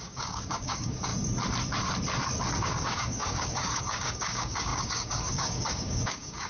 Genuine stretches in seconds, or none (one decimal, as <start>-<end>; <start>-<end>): 1.1-2.6